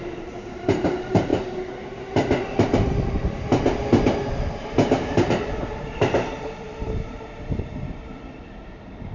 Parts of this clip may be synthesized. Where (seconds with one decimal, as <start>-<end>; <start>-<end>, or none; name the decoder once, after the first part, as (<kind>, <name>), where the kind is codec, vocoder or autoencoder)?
0.0-1.3 (vocoder, BigVGAN v2); 4.3-9.1